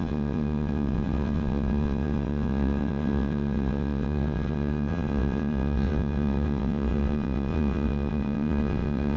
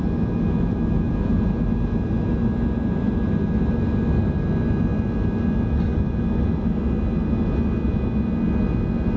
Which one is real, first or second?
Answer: second